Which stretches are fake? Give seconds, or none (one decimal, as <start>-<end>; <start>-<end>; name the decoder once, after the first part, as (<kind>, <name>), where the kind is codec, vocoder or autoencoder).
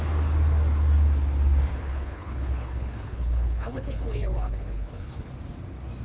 1.7-5.3 (codec, HILCodec)